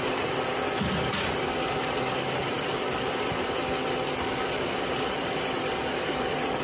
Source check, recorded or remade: recorded